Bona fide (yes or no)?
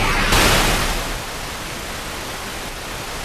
yes